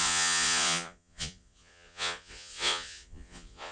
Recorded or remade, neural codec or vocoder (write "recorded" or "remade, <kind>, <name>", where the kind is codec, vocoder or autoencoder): remade, vocoder, Vocos